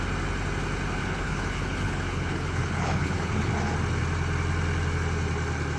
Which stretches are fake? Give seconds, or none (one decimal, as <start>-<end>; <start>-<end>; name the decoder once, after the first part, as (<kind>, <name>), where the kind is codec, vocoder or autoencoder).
1.0-3.5 (codec, HILCodec)